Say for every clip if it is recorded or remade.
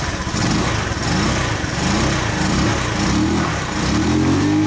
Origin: recorded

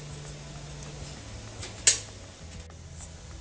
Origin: recorded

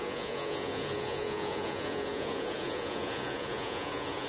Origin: remade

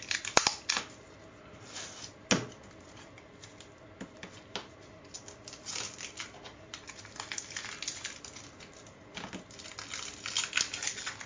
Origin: recorded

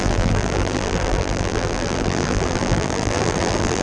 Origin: remade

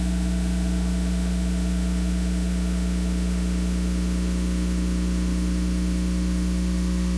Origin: remade